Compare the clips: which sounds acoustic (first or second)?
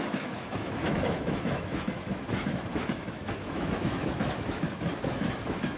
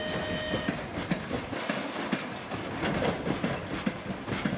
second